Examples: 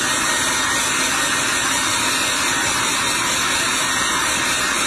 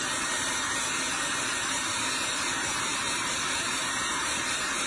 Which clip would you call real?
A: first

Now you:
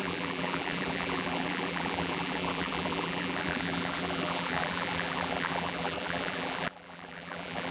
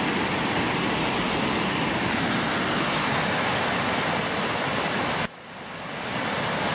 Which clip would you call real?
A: second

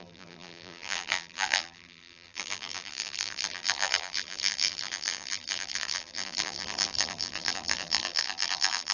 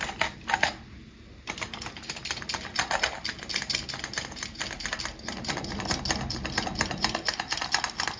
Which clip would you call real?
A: second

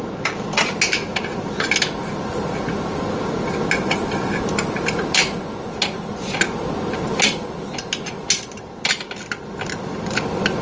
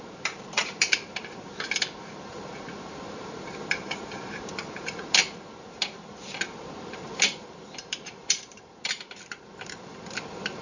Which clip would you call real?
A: first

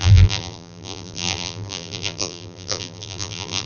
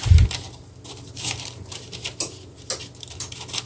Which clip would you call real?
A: second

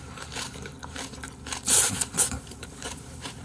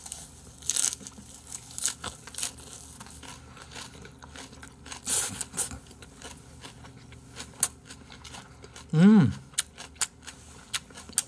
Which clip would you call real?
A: second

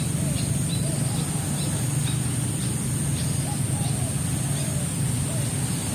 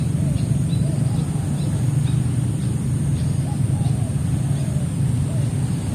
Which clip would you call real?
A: first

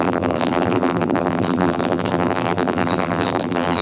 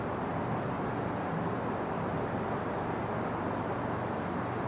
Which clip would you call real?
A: second